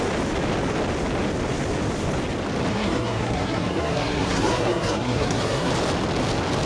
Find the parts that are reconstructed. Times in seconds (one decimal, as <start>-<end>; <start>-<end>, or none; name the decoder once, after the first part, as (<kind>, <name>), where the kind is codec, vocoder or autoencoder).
2.7-5.7 (codec, SNAC)